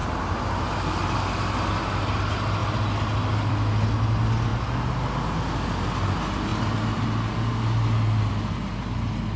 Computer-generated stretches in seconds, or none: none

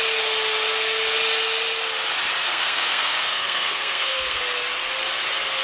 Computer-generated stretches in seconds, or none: 2.4-4.4 (codec, SNAC)

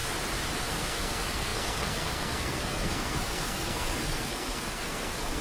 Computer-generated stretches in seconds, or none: 0.6-5.4 (codec, SNAC)

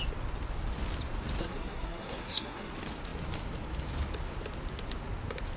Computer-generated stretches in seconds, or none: 1.4-2.7 (codec, SNAC)

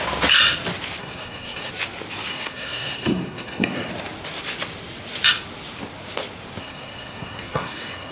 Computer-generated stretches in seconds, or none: 1.0-1.7 (codec, SNAC); 2.3-3.9; 6.6-8.1

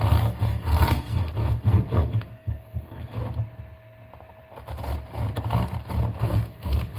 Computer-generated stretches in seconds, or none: 0.0-3.2 (codec, SNAC); 6.2-7.0

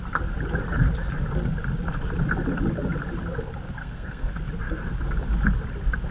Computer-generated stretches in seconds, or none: 3.8-4.4 (codec, SNAC)